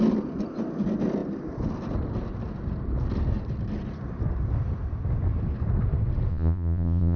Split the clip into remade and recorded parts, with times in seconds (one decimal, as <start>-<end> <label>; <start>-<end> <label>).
0.0-6.3 recorded; 6.3-7.2 remade